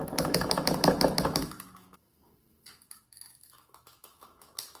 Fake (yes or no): yes